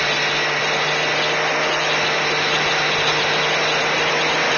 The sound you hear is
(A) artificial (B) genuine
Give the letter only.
B